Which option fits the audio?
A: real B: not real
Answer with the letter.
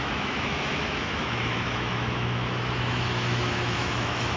B